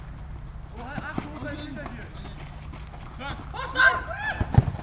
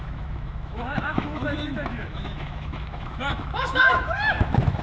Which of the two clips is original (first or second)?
first